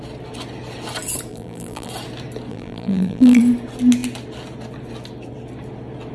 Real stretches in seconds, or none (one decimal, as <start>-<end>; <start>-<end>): 0.0-1.3; 1.9-2.5; 3.4-6.1